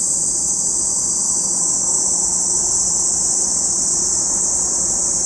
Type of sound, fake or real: fake